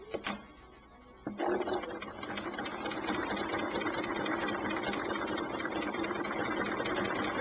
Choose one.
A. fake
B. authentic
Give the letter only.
B